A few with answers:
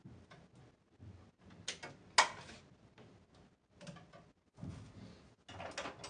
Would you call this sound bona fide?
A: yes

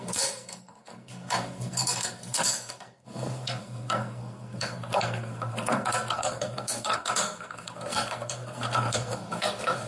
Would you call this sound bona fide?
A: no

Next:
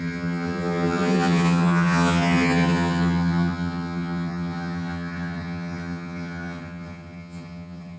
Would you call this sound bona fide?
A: no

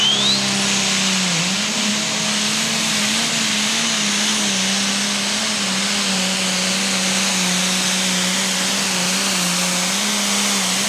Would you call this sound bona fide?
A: yes